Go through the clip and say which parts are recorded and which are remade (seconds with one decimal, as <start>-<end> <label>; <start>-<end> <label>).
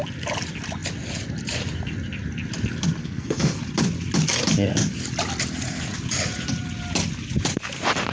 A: 0.0-3.0 recorded; 3.0-3.6 remade; 3.6-8.1 recorded